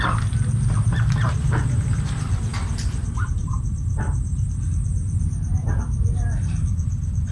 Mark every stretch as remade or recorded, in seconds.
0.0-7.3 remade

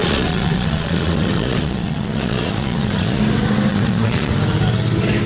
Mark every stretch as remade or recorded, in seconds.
0.0-3.2 remade; 3.2-3.7 recorded; 3.7-4.3 remade; 4.3-5.3 recorded

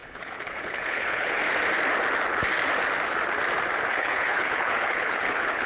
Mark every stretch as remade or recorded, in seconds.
0.0-1.4 remade; 1.4-3.9 recorded; 3.9-5.7 remade

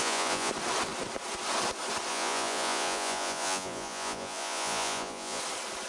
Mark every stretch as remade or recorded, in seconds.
0.0-0.5 remade; 0.5-2.1 recorded; 2.1-5.4 remade; 5.4-5.9 recorded

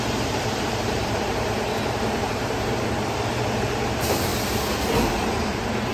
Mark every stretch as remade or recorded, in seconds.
0.0-4.3 remade; 4.3-5.1 recorded; 5.1-5.9 remade

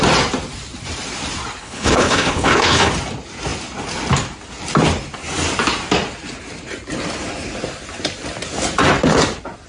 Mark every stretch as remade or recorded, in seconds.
0.0-1.6 recorded; 1.6-2.9 remade; 2.9-9.7 recorded

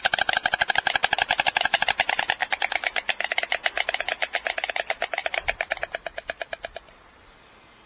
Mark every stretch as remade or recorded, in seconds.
0.0-0.4 recorded; 0.4-1.9 remade; 1.9-2.4 recorded; 2.4-4.7 remade; 4.7-5.2 recorded; 5.2-7.9 remade